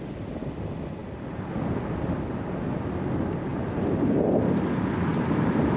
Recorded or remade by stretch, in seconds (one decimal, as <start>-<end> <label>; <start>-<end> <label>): 0.0-5.8 recorded